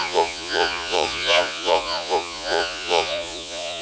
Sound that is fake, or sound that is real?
fake